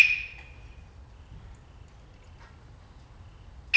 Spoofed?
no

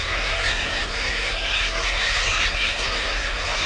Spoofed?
yes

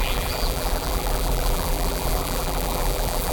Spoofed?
yes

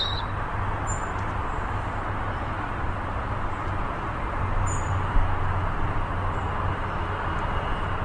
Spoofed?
no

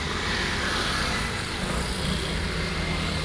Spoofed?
no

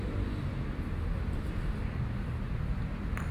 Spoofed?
no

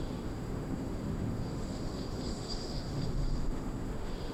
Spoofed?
yes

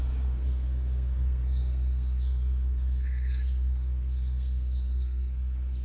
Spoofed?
yes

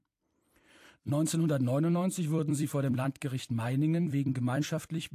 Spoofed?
yes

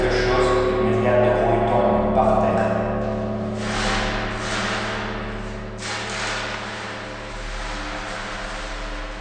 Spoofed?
no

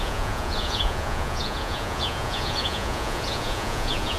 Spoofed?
yes